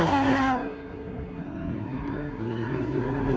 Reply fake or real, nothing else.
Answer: fake